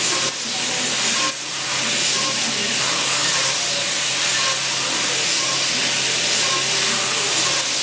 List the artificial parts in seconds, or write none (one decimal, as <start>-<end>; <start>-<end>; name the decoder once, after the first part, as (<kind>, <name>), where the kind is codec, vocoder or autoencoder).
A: 2.6-3.3 (codec, DAC)